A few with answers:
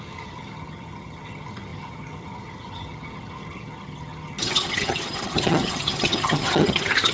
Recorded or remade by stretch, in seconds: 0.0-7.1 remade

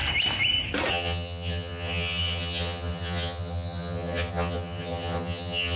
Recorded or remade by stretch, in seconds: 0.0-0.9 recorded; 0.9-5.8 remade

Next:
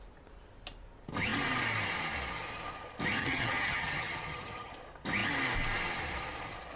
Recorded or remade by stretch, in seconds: 0.0-3.2 recorded; 3.2-4.7 remade; 4.7-6.8 recorded